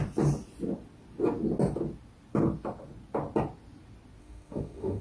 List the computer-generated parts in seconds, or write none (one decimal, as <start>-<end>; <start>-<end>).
4.2-5.0